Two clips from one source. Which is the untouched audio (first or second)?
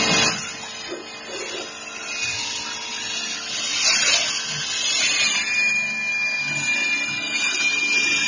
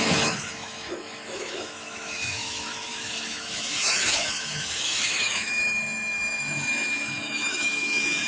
first